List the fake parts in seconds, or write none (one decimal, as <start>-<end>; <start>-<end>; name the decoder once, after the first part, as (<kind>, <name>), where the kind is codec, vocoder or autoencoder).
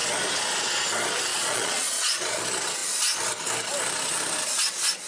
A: 1.3-2.4 (vocoder, Vocos)